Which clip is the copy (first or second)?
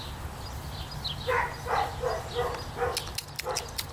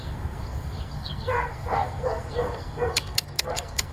second